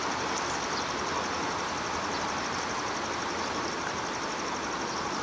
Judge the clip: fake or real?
real